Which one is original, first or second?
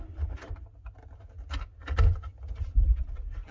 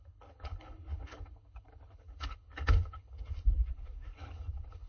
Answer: first